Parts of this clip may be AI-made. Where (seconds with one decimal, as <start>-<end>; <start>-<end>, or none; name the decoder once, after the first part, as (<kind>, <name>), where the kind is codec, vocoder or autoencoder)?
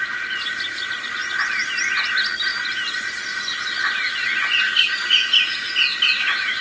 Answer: none